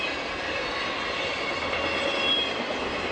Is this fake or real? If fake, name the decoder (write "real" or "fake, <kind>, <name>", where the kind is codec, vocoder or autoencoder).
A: real